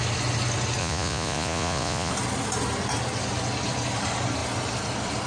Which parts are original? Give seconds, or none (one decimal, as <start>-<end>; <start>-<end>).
0.0-0.8; 2.1-5.3